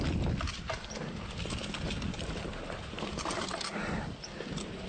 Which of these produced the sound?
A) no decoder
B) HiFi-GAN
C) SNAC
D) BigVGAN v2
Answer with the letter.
A